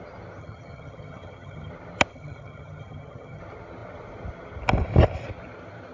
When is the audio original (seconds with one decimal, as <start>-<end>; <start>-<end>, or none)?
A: 0.0-0.4; 1.7-2.1; 3.4-5.9